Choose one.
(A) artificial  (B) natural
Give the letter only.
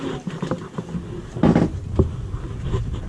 B